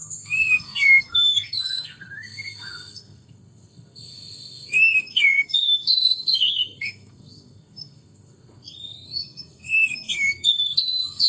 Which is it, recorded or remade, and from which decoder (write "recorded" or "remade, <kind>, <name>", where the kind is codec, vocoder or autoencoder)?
remade, codec, SNAC